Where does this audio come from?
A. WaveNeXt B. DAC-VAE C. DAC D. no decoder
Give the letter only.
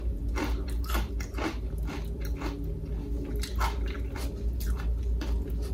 D